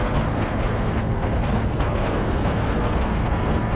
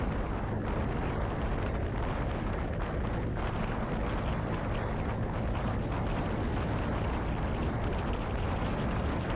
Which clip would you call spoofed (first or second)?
first